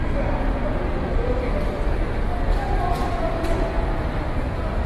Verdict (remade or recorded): recorded